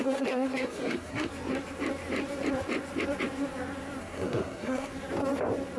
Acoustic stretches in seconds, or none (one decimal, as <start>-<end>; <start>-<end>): 1.3-4.0; 4.9-5.8

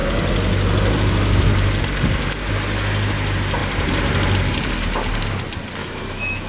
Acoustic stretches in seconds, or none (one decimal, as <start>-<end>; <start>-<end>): 0.0-5.8

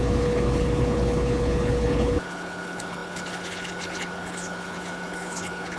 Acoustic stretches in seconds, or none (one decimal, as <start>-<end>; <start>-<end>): none